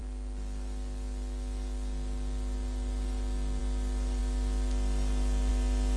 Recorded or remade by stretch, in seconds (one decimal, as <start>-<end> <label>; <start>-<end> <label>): 0.0-6.0 recorded